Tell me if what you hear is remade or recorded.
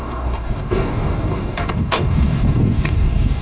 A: remade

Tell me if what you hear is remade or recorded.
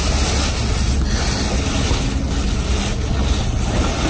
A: recorded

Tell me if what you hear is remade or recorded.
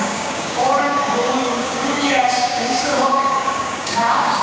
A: remade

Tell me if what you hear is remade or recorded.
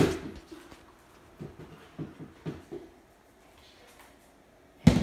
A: recorded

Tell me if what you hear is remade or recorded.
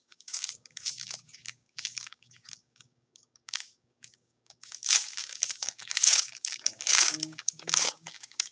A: remade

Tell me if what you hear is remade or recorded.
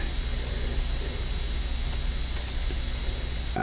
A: recorded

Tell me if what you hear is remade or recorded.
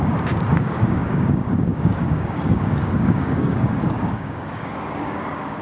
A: remade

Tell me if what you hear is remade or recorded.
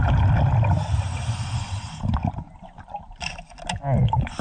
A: recorded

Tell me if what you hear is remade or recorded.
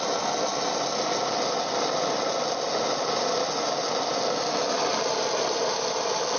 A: recorded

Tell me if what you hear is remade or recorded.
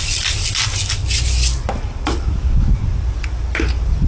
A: recorded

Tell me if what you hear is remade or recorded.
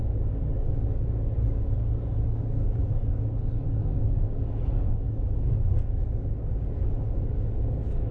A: remade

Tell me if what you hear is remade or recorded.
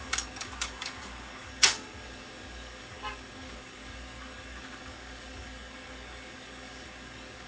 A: remade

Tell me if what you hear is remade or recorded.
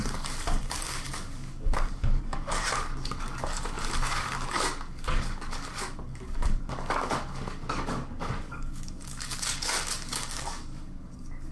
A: remade